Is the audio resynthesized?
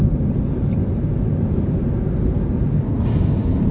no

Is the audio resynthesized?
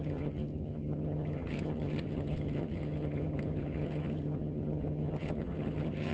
yes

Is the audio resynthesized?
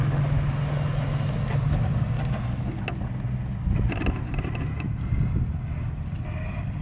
no